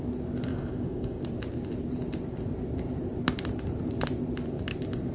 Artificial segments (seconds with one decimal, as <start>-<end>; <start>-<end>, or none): 0.5-1.2